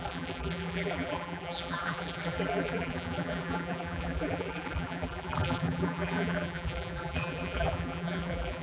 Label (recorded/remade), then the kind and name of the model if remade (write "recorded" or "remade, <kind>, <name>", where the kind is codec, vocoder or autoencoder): remade, vocoder, BigVGAN v2